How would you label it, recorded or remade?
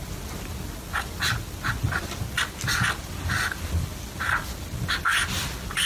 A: recorded